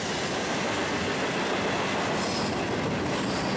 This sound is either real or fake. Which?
real